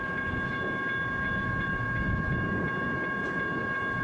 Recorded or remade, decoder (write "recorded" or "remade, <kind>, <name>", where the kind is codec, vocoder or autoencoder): remade, vocoder, Vocos